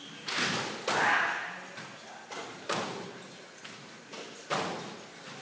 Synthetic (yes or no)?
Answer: no